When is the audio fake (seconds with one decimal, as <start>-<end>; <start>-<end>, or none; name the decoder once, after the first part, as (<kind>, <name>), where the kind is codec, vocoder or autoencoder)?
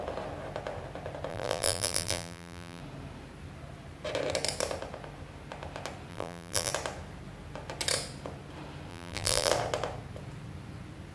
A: 1.3-2.8 (vocoder, BigVGAN v2); 6.1-6.7; 8.9-9.5